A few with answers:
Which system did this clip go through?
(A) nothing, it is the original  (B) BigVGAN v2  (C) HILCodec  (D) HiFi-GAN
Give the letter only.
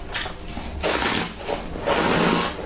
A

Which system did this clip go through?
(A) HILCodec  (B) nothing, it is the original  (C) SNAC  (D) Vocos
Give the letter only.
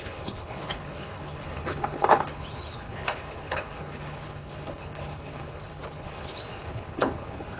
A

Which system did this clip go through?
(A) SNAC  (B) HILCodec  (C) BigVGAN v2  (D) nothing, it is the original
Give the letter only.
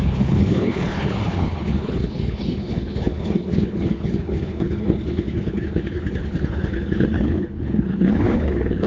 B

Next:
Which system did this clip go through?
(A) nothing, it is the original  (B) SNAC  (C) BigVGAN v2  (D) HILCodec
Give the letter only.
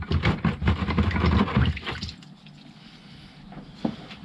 A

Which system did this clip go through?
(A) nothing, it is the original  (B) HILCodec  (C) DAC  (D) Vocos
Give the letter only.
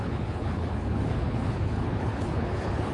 B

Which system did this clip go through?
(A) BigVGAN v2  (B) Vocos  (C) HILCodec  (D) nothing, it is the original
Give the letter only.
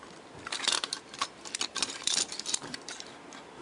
D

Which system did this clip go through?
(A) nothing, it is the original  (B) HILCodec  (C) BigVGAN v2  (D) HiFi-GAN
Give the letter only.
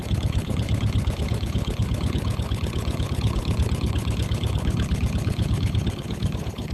B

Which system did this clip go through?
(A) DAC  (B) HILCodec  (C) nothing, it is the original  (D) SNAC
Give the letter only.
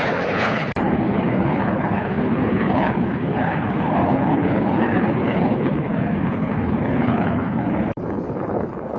B